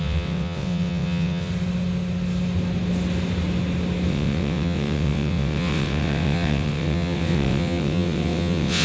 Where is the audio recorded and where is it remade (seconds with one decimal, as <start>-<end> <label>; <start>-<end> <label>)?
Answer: 0.0-1.5 remade; 1.5-4.1 recorded; 4.1-8.8 remade